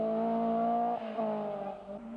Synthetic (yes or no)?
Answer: no